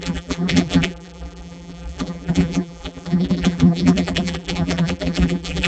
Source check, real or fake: fake